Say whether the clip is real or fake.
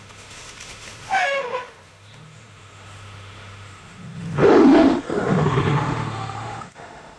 fake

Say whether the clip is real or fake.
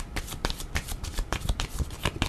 fake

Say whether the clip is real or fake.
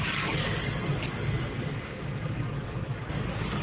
fake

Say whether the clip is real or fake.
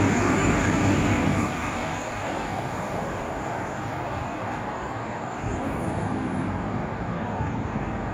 fake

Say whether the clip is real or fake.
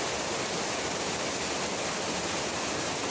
real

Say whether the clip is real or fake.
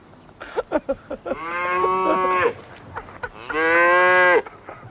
real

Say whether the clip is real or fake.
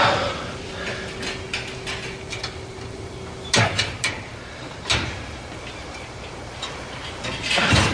real